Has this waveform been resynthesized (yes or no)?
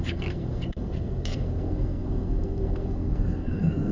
yes